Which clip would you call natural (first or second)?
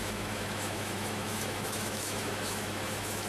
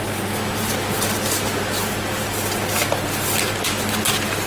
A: second